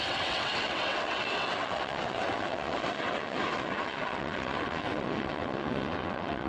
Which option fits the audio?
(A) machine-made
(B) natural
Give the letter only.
A